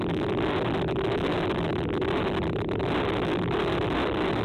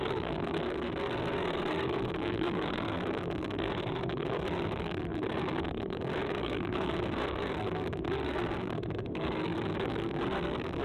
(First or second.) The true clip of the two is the first